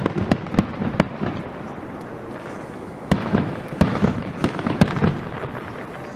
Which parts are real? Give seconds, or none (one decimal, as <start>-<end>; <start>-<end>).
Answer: 0.0-2.4; 4.8-6.2